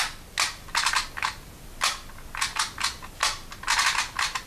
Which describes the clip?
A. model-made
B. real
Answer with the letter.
B